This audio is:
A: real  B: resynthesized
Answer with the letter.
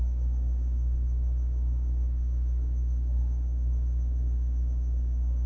B